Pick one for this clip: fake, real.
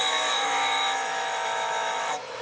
fake